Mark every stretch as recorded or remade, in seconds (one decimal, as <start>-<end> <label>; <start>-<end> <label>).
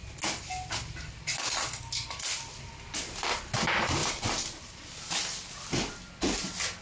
0.0-6.8 recorded